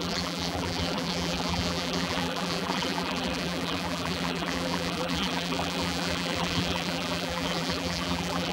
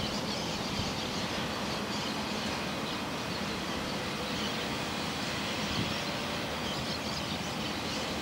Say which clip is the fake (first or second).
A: first